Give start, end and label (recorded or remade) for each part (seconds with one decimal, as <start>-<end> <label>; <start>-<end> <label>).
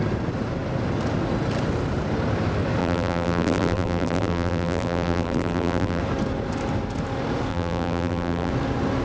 0.0-2.8 recorded; 2.8-6.0 remade; 6.0-7.5 recorded; 7.5-8.5 remade; 8.5-9.0 recorded